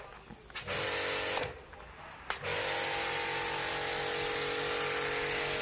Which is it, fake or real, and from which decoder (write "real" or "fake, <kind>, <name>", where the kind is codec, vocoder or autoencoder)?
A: real